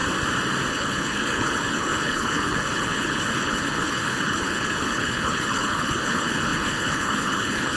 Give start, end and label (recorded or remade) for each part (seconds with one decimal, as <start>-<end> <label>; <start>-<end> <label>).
0.0-0.7 recorded; 0.7-7.8 remade